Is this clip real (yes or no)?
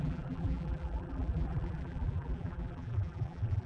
no